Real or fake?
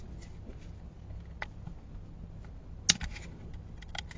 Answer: real